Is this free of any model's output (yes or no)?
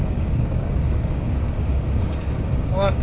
no